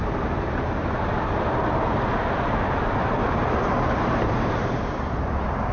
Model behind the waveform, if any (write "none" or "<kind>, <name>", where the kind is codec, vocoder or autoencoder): vocoder, BigVGAN v2